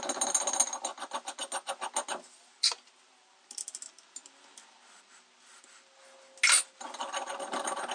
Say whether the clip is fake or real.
real